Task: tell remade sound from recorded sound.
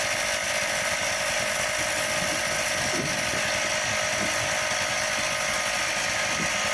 recorded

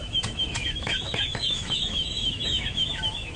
remade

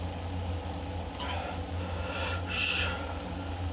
recorded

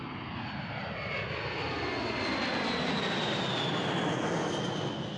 recorded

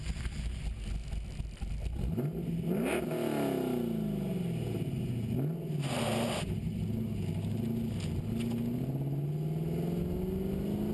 recorded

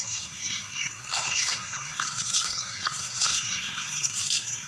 remade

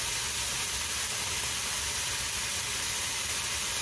recorded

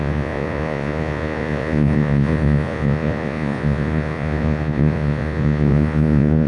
remade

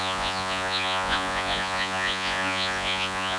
remade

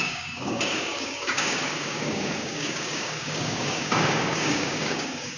remade